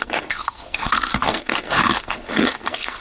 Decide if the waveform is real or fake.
fake